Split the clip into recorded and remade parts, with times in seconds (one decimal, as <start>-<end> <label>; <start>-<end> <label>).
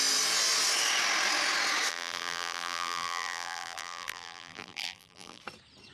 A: 0.0-1.9 recorded; 1.9-5.4 remade; 5.4-5.9 recorded